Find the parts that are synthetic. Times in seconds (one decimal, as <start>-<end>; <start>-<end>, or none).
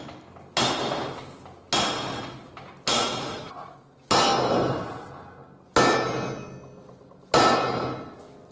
2.9-3.8